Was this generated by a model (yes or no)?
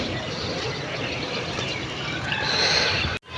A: no